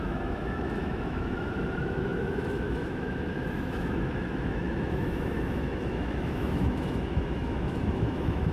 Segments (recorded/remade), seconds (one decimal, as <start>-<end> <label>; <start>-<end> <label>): 0.0-8.5 remade